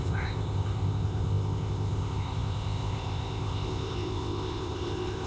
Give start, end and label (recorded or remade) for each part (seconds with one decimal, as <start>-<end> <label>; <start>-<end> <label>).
0.0-5.3 remade